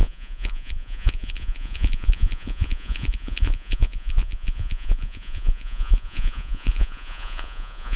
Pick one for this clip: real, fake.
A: fake